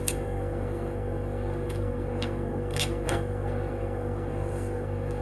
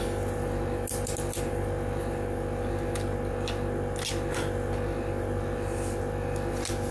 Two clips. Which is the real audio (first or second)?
second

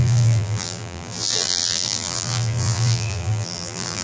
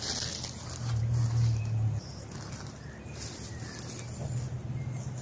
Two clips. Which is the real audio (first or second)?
second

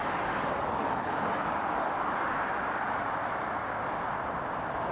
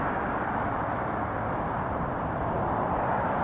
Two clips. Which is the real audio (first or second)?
first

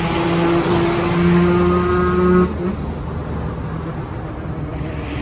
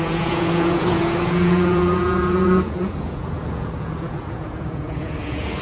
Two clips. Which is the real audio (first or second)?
first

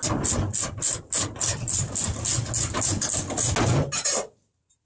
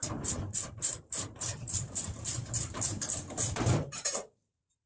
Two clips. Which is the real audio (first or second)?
first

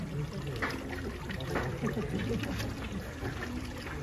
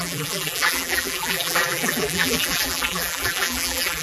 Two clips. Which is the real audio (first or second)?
first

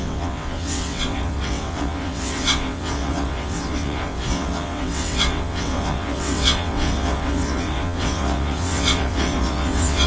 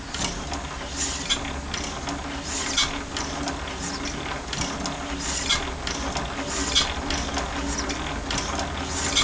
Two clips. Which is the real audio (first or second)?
second